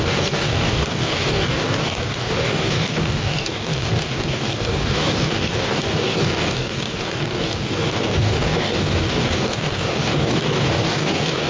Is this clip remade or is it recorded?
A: remade